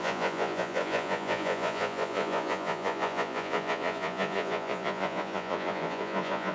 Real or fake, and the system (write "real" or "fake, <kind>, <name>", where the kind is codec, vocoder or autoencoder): fake, vocoder, Vocos